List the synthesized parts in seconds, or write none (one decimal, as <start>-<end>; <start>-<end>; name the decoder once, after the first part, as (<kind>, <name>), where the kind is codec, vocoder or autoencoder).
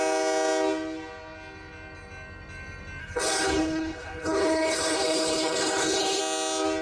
3.0-6.2 (codec, HILCodec)